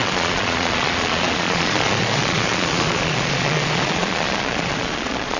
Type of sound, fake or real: fake